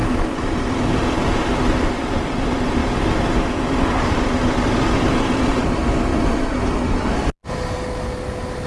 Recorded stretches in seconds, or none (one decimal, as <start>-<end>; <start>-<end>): 0.0-8.7